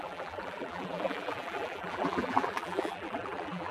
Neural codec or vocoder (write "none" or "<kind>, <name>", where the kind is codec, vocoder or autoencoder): vocoder, BigVGAN v2